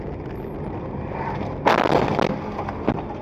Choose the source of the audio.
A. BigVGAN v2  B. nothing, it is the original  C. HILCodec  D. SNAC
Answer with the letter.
B